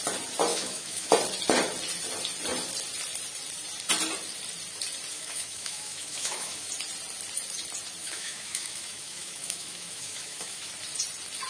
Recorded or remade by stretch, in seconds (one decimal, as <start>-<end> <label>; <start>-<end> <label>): 0.0-0.5 recorded; 0.5-1.1 remade; 1.1-5.1 recorded; 5.1-6.7 remade; 6.7-8.0 recorded; 8.0-10.7 remade; 10.7-11.5 recorded